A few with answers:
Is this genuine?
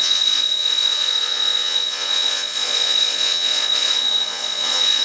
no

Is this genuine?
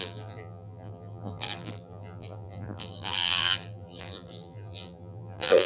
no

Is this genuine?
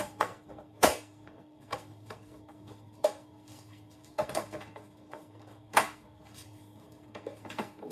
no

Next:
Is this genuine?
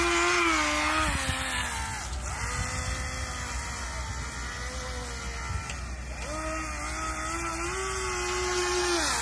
yes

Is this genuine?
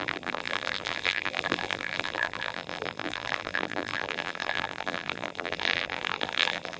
no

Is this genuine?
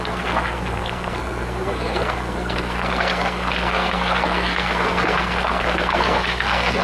no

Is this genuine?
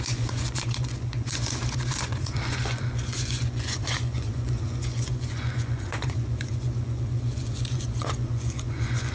no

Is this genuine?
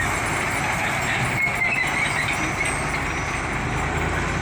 yes